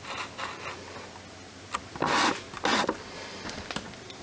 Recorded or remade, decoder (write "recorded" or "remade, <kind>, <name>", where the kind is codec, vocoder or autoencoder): recorded